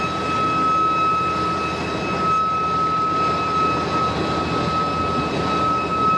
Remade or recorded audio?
recorded